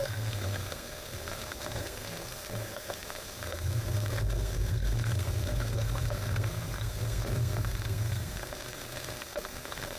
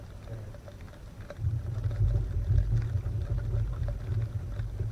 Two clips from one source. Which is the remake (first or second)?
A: first